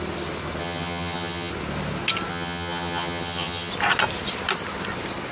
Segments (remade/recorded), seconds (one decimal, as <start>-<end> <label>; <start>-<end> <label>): 0.0-0.6 recorded; 0.6-1.5 remade; 1.5-2.3 recorded; 2.3-3.7 remade; 3.7-5.3 recorded